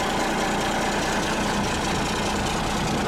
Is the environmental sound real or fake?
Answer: real